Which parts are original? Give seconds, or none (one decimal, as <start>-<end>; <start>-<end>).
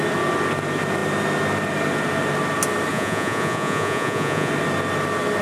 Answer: 0.0-2.9; 4.5-5.4